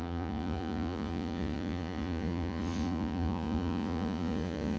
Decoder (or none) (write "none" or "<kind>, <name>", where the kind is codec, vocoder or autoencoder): vocoder, Vocos